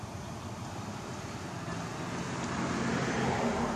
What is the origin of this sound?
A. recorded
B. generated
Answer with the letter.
A